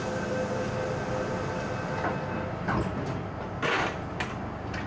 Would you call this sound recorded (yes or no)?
yes